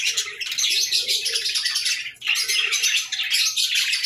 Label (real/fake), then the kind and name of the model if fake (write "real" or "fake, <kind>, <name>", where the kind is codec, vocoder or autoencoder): real